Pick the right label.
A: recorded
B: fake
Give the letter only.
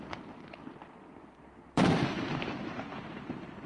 B